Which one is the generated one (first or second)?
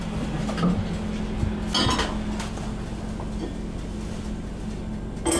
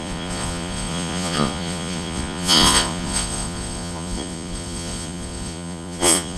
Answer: second